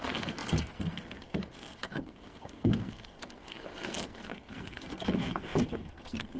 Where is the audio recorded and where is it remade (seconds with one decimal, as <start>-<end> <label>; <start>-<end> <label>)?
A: 0.0-6.4 remade